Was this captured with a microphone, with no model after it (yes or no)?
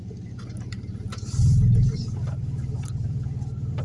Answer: no